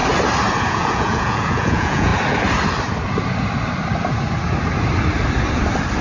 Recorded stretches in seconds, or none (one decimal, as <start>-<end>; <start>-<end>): 0.0-0.6; 2.1-6.0